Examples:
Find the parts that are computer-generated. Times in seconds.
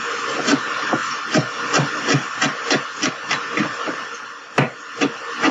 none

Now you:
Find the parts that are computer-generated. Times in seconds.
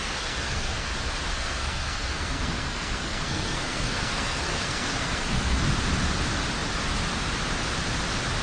0.0-0.9 (codec, SNAC); 1.3-5.6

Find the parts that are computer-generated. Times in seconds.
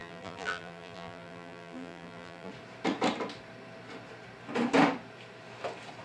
0.0-2.5 (vocoder, BigVGAN v2)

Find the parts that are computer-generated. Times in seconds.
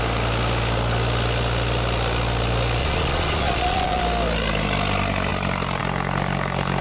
2.8-4.0 (vocoder, Vocos)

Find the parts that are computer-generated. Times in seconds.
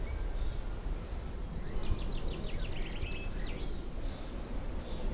none